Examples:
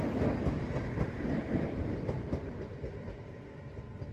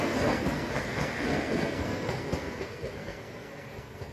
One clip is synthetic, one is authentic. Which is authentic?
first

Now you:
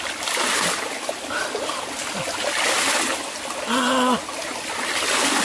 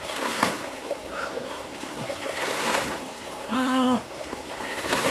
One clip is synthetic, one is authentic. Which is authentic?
first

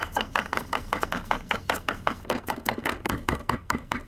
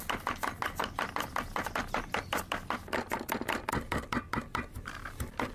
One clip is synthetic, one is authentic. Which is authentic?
second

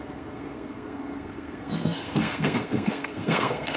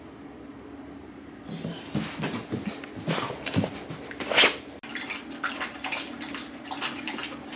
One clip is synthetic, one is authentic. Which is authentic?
second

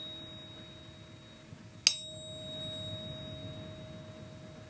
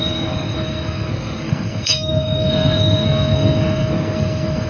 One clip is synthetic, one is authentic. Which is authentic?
first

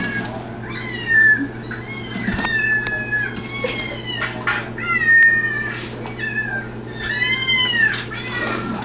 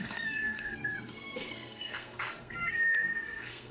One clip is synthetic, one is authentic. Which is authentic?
first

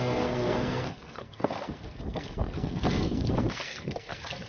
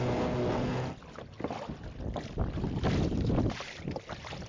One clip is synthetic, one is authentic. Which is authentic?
second